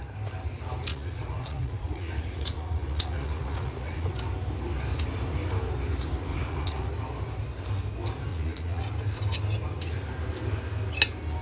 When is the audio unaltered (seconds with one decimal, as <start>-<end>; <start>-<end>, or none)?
0.0-0.9; 4.1-6.3; 6.9-8.3; 8.8-11.4